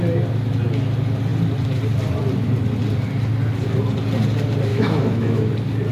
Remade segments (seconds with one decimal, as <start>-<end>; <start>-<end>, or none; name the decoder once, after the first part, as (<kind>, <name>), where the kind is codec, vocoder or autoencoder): 4.7-5.5 (autoencoder, DAC-VAE)